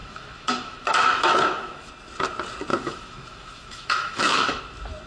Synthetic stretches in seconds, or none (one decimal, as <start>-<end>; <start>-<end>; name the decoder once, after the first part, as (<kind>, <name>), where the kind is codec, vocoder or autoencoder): 0.0-1.9 (autoencoder, DAC-VAE); 2.7-4.6